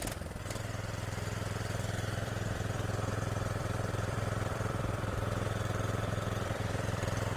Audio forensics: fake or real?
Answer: fake